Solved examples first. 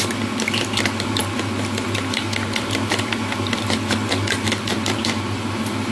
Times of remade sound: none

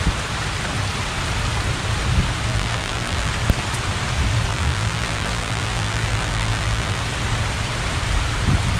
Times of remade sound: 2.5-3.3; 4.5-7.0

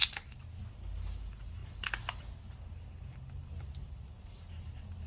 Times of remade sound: none

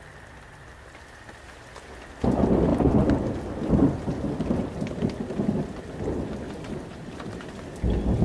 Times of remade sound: none

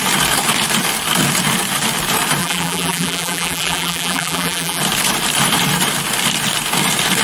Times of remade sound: 2.4-4.8

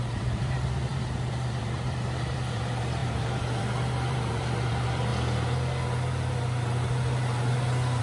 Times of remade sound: 0.0-5.1

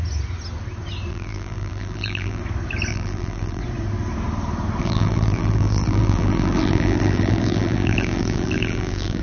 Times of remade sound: 1.1-2.4; 2.9-3.6; 4.8-9.2